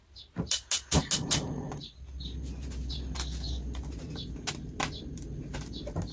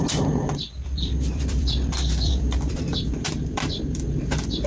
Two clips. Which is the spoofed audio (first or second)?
second